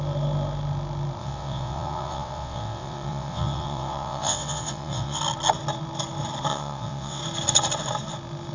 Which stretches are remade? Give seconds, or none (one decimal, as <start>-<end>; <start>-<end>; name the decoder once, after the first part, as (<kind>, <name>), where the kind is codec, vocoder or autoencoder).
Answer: 1.2-5.2 (vocoder, WaveNeXt); 6.5-7.2